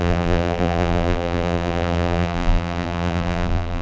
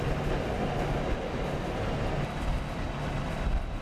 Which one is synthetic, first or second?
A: first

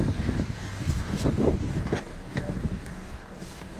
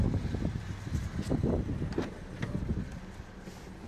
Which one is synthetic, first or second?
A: first